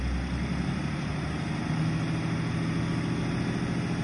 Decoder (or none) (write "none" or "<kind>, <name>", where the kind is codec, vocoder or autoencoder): none